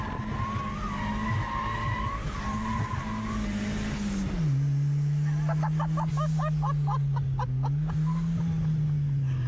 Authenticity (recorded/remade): recorded